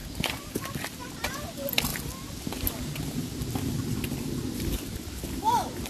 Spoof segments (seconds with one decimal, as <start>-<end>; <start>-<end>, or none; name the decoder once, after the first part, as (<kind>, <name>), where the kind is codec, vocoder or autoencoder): none